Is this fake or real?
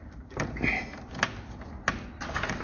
real